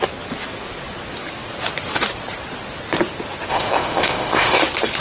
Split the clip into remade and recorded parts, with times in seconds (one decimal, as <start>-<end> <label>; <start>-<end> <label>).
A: 0.0-3.5 recorded; 3.5-4.6 remade; 4.6-5.0 recorded